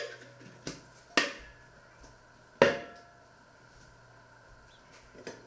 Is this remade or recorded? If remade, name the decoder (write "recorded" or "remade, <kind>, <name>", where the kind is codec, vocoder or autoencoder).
recorded